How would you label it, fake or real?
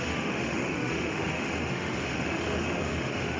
fake